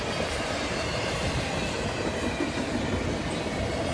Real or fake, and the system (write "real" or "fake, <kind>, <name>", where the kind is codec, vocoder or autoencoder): real